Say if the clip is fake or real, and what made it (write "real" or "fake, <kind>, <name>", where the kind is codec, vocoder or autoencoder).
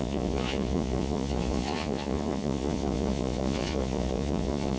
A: fake, vocoder, Vocos